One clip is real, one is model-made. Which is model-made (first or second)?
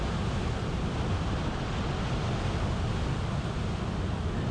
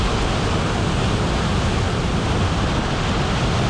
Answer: first